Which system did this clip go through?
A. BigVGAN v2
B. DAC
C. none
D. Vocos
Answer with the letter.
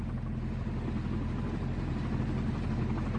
C